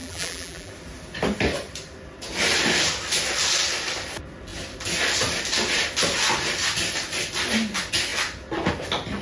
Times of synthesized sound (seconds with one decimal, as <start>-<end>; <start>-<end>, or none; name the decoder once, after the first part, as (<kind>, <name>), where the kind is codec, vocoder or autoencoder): 0.0-0.7 (vocoder, BigVGAN v2)